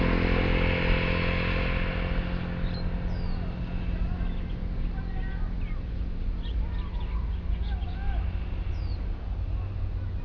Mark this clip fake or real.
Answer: real